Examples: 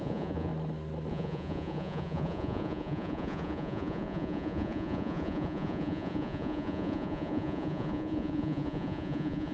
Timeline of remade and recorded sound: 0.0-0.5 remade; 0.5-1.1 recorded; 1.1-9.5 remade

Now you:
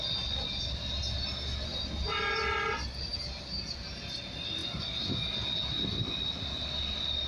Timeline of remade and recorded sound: 0.0-7.3 recorded